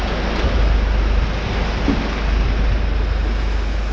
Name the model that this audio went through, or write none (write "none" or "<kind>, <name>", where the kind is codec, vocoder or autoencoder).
none